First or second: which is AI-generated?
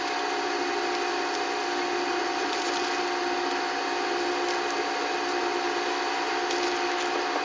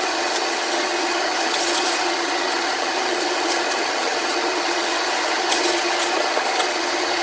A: second